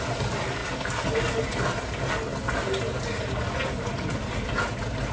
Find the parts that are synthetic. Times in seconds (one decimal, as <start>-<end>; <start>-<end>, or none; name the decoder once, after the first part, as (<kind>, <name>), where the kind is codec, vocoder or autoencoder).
none